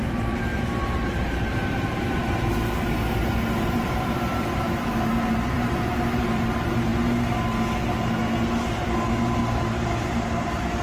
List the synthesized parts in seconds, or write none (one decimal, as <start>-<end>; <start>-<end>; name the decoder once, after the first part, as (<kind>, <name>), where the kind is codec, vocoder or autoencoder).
0.0-6.9 (vocoder, BigVGAN v2); 8.6-10.8